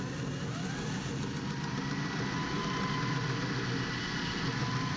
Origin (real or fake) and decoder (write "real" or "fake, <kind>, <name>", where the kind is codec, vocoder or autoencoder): real